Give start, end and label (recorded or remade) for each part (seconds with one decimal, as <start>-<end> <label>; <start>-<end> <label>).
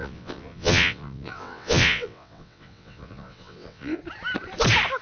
0.0-4.0 remade; 4.0-5.0 recorded